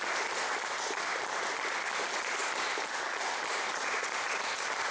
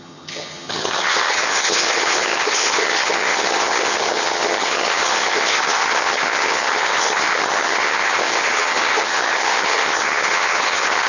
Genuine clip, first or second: first